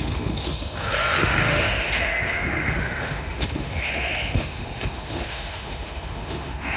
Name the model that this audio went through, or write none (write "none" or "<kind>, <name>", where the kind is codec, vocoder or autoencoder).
autoencoder, DAC-VAE